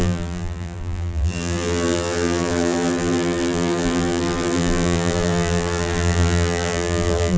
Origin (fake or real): fake